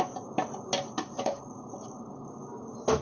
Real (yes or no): yes